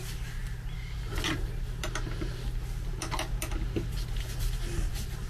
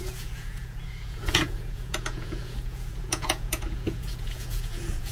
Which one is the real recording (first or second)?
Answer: first